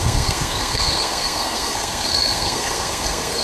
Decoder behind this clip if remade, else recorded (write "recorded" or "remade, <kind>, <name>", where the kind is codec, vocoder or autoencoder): remade, codec, SNAC